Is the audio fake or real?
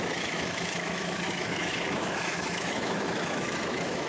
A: fake